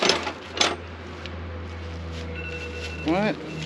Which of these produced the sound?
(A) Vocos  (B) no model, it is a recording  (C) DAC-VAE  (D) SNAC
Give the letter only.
B